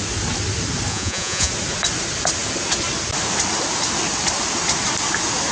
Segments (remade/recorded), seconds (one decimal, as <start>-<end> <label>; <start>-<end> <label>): 0.0-0.9 recorded; 0.9-1.5 remade; 1.5-5.5 recorded